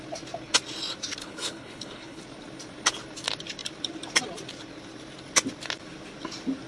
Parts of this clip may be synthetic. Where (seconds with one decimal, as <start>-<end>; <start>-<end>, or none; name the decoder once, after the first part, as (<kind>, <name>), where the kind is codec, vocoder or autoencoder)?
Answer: 1.2-2.2 (codec, HILCodec)